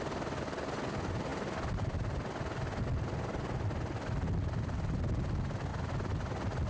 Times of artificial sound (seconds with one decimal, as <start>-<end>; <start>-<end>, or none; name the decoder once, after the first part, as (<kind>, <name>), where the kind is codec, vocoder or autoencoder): none